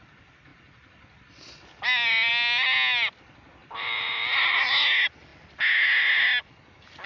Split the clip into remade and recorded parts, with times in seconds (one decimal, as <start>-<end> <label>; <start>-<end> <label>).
0.0-3.6 recorded; 3.6-4.7 remade; 4.7-7.1 recorded